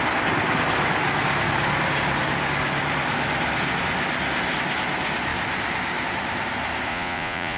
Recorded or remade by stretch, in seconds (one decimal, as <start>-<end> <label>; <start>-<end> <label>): 0.0-6.9 recorded; 6.9-7.6 remade